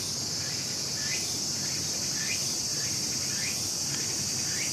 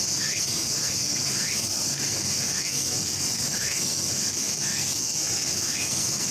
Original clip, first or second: first